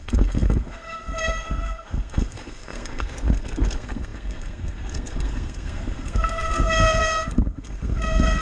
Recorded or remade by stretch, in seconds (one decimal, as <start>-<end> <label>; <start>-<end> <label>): 0.0-8.4 remade